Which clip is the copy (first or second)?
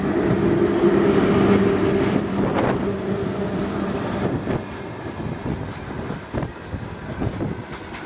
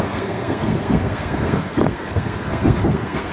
second